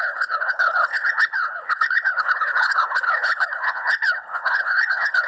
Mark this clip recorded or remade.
remade